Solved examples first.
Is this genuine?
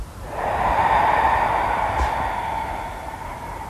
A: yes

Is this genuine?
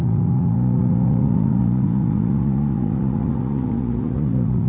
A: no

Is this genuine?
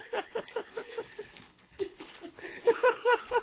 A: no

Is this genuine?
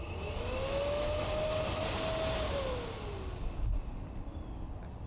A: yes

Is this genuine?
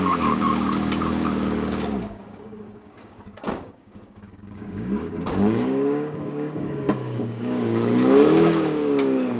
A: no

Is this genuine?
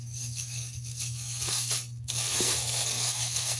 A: no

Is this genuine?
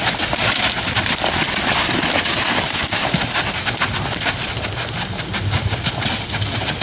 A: yes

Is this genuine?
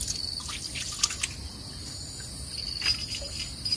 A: yes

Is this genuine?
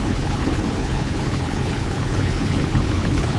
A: no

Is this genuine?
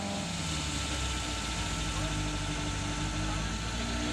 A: yes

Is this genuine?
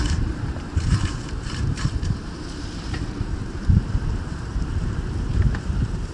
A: no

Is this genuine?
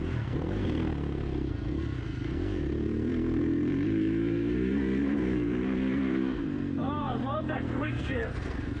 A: no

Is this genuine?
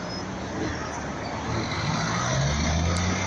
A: yes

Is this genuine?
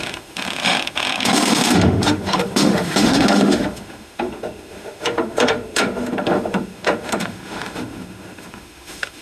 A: no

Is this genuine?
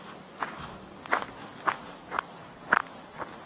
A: yes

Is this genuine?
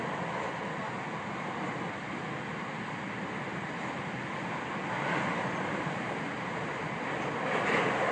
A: yes